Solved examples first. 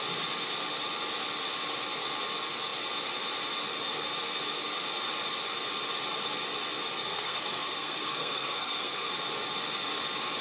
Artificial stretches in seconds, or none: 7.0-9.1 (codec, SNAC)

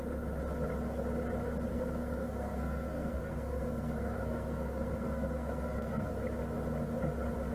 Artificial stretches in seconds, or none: 1.7-6.1 (codec, SNAC)

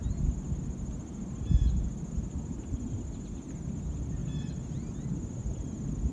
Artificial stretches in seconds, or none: none

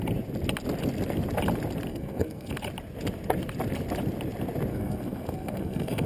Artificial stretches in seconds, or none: 1.9-2.5 (codec, SNAC); 4.7-6.1

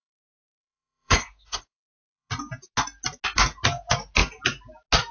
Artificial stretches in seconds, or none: 0.0-2.3 (codec, SNAC)

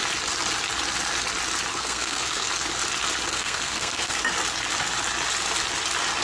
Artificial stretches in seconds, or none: 1.7-2.5 (codec, SNAC); 3.3-4.2